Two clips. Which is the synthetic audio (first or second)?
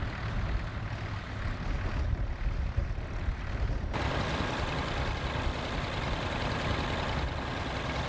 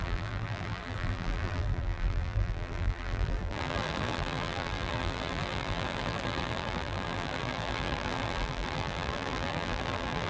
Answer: second